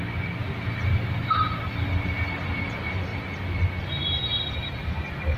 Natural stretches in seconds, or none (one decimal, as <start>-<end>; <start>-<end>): 0.0-5.4